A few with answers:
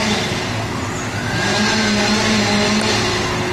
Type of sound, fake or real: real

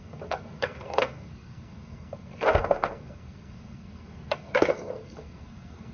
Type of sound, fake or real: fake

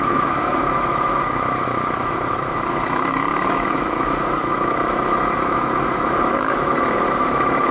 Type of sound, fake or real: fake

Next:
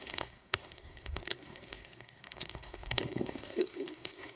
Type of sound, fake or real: fake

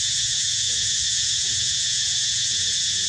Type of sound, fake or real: fake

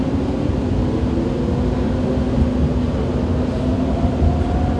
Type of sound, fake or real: real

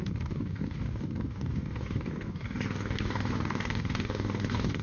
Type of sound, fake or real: fake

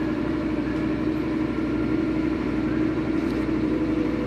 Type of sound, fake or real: fake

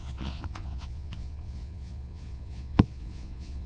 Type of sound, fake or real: fake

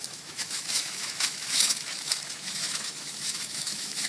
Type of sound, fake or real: fake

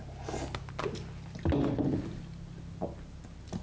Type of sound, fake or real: real